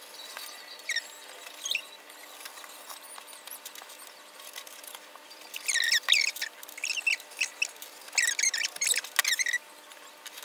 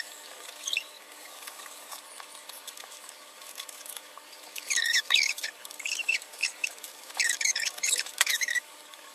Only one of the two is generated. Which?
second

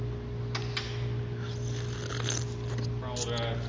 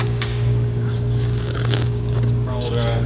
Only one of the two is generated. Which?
second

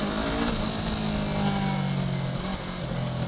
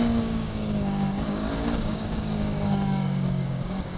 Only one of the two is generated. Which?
second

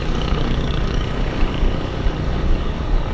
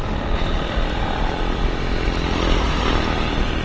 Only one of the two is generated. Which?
first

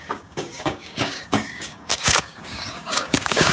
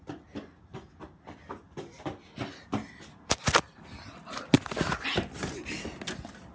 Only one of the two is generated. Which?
first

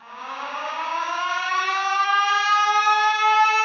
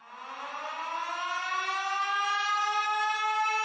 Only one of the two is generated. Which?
first